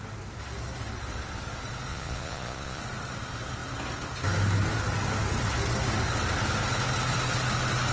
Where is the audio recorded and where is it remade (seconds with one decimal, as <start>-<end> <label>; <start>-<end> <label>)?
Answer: 0.0-1.9 recorded; 1.9-2.8 remade; 2.8-7.9 recorded